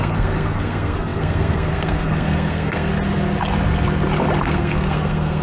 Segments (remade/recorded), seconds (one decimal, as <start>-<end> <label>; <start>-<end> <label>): 0.0-2.9 remade; 2.9-4.4 recorded; 4.4-5.4 remade